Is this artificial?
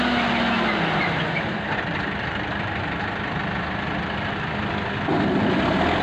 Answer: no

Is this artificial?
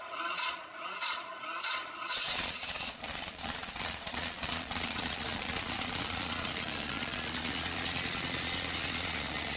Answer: yes